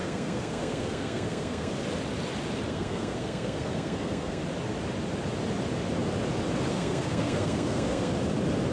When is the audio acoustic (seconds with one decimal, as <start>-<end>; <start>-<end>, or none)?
1.7-2.7; 4.4-6.7; 8.1-8.7